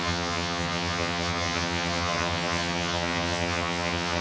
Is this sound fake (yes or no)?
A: yes